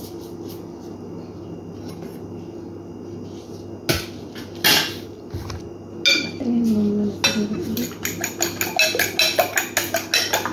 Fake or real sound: real